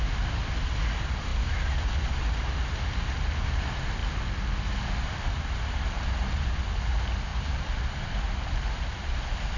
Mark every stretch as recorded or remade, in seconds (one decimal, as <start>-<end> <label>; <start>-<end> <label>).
0.0-1.3 recorded; 1.3-2.5 remade; 2.5-7.3 recorded; 7.3-7.8 remade; 7.8-9.6 recorded